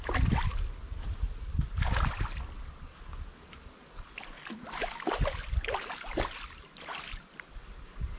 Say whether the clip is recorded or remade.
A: recorded